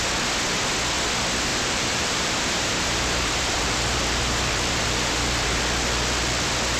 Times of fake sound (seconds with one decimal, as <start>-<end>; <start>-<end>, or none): 1.5-5.6